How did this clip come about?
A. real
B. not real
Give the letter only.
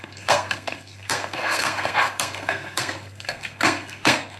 B